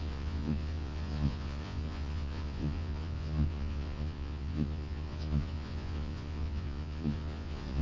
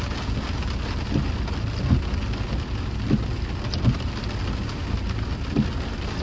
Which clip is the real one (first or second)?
second